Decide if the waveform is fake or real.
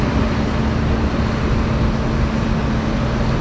real